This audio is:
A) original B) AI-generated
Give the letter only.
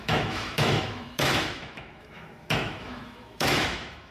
B